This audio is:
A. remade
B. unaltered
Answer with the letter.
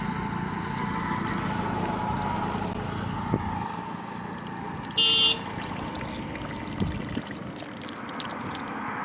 B